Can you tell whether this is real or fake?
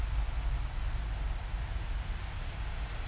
real